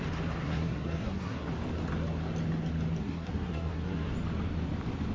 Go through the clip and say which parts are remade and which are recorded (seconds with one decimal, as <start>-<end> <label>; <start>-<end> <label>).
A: 0.0-0.4 recorded; 0.4-1.5 remade; 1.5-3.0 recorded; 3.0-4.1 remade; 4.1-5.1 recorded